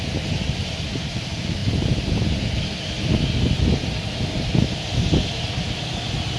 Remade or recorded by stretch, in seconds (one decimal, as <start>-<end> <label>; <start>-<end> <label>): 0.0-6.4 recorded